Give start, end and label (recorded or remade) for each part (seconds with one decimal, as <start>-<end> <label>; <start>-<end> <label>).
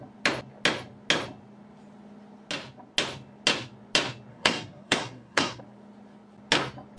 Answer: 0.0-4.3 recorded; 4.3-5.6 remade; 5.6-7.0 recorded